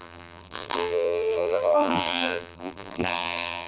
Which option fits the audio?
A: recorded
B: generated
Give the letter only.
B